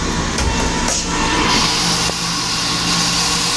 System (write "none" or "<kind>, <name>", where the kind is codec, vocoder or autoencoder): none